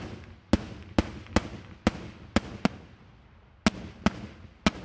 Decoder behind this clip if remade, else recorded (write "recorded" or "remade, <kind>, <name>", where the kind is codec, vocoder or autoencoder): recorded